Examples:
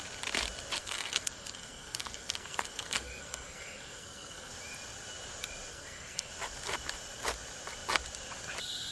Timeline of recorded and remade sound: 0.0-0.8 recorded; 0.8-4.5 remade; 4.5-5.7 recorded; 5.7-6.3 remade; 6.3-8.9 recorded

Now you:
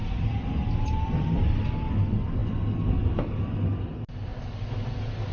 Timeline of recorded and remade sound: 0.0-5.3 recorded